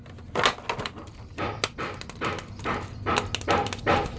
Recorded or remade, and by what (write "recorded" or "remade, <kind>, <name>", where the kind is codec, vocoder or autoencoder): recorded